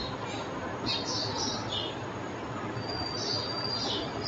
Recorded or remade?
recorded